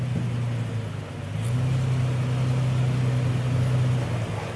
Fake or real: real